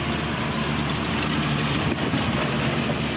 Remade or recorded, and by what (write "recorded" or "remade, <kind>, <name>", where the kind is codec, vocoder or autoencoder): recorded